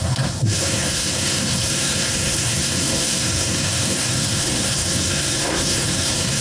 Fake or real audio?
fake